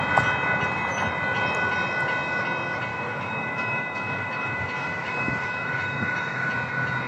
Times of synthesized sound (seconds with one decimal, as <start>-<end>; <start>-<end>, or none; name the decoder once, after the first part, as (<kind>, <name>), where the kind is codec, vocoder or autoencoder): 2.9-6.5 (autoencoder, DAC-VAE)